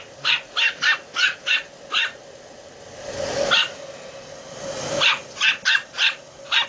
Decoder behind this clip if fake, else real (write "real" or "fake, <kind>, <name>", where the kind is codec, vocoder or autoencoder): real